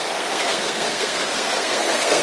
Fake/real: fake